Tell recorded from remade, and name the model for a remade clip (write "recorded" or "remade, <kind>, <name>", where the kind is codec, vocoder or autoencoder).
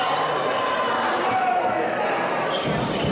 recorded